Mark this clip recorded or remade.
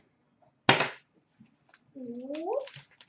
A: recorded